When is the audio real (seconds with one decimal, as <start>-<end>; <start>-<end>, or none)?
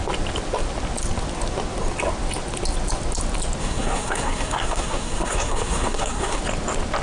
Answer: 0.0-3.6; 6.4-7.0